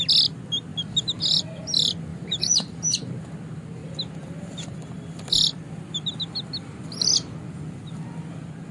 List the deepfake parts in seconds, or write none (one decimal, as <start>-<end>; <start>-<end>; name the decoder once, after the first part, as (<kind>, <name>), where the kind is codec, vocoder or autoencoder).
2.1-3.2 (vocoder, BigVGAN v2)